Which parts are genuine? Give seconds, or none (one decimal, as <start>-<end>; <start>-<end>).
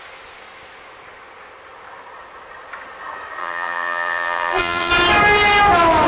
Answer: 0.0-3.4; 4.9-6.1